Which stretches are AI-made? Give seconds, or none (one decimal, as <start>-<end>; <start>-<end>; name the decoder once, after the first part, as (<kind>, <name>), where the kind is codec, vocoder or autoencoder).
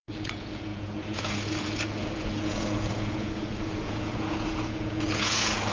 0.0-5.7 (vocoder, Vocos)